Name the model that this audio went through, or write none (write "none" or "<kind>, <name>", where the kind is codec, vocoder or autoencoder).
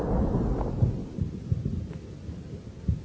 none